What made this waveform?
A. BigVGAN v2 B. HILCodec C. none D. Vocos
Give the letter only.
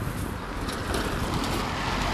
C